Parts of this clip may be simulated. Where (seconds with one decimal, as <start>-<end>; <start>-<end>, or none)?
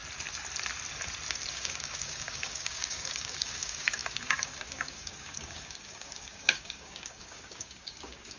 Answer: 1.5-8.4